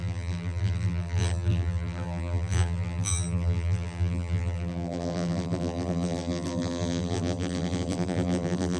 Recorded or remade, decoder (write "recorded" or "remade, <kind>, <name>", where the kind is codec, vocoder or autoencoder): remade, vocoder, BigVGAN v2